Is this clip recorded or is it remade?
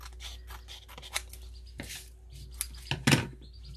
recorded